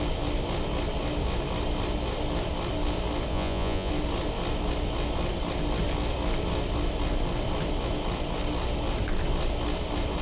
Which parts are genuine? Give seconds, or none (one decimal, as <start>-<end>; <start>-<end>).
0.0-3.3; 3.9-10.2